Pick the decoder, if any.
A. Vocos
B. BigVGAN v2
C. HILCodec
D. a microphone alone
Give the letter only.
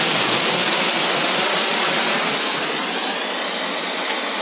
D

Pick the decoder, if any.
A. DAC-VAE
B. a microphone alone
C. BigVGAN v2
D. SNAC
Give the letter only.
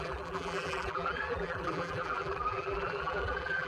C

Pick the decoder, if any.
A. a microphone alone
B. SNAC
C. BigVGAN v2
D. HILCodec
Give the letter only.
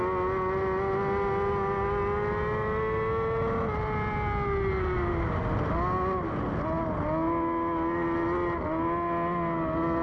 A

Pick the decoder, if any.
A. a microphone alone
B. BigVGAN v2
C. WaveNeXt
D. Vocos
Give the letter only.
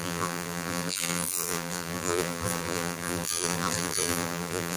B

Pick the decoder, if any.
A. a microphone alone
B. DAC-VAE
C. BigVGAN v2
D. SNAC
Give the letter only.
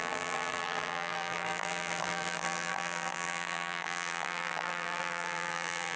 C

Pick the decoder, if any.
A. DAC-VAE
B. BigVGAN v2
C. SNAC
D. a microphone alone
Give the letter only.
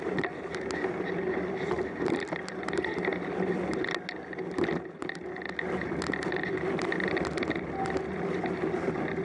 D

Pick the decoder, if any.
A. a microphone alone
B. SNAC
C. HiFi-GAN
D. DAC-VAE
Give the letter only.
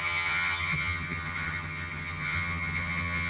C